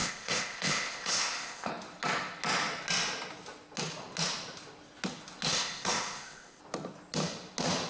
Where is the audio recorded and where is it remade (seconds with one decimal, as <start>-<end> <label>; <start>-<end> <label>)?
0.0-1.7 remade; 1.7-5.5 recorded; 5.5-6.6 remade; 6.6-7.9 recorded